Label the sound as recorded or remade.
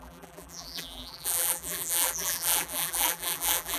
remade